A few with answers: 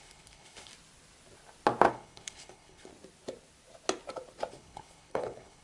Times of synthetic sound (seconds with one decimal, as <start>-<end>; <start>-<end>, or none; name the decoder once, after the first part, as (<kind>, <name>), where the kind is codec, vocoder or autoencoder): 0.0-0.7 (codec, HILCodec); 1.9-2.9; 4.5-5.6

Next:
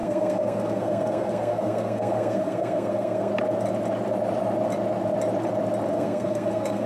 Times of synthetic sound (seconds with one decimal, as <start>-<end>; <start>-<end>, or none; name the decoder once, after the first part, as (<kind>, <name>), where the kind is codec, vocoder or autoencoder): 0.0-3.3 (codec, SNAC); 5.9-6.9

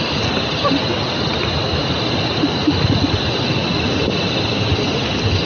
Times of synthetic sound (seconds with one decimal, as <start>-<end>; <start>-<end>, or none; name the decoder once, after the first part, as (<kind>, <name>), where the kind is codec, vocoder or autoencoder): none

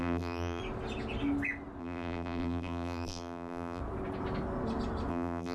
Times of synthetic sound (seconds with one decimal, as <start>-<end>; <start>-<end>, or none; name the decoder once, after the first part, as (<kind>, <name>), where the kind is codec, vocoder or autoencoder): 0.0-0.6 (vocoder, BigVGAN v2); 1.8-3.8; 5.1-5.5

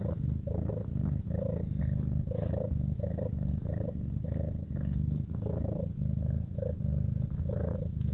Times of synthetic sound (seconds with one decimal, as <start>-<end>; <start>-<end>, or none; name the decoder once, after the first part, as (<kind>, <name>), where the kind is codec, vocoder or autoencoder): none